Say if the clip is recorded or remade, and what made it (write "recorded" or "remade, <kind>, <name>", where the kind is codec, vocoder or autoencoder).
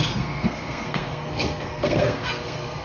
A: remade, codec, SNAC